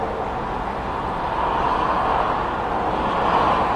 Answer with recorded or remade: recorded